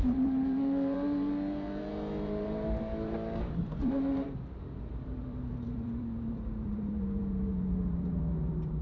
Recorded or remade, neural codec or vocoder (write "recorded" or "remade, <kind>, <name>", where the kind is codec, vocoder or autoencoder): remade, vocoder, BigVGAN v2